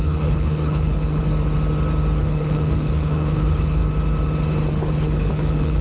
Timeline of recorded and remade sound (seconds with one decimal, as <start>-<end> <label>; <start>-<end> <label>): 0.0-1.2 remade; 1.2-2.2 recorded; 2.2-3.8 remade; 3.8-4.7 recorded; 4.7-5.8 remade